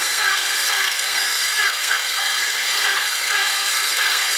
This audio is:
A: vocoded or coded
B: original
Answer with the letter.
A